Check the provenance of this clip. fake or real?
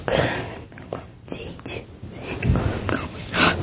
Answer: real